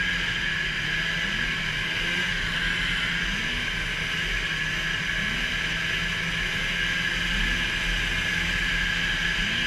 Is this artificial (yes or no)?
no